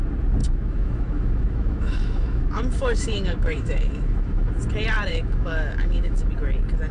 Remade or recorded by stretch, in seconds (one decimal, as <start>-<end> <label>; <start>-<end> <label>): 0.0-0.4 recorded; 0.4-4.5 remade; 4.5-5.1 recorded; 5.1-6.3 remade; 6.3-6.9 recorded

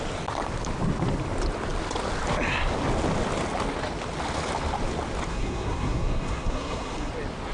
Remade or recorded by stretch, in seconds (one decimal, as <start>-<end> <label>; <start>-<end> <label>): 0.0-5.3 recorded; 5.3-7.1 remade; 7.1-7.5 recorded

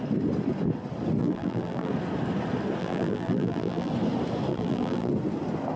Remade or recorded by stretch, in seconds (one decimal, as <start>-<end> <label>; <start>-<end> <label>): 0.0-1.2 recorded; 1.2-1.9 remade; 1.9-2.8 recorded; 2.8-3.9 remade; 3.9-4.5 recorded; 4.5-5.1 remade; 5.1-5.8 recorded

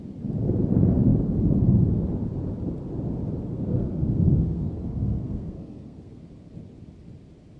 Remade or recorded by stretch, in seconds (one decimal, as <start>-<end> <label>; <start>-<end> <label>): 0.0-3.5 recorded; 3.5-6.2 remade; 6.2-7.6 recorded

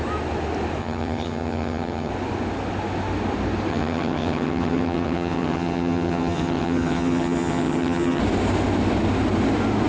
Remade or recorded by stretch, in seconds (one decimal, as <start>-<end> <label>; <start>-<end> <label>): 0.0-0.8 recorded; 0.8-2.1 remade; 2.1-3.7 recorded; 3.7-8.2 remade; 8.2-9.9 recorded

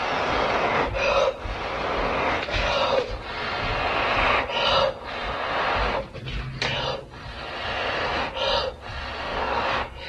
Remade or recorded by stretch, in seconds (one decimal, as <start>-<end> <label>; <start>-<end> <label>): 0.0-9.3 recorded; 9.3-10.1 remade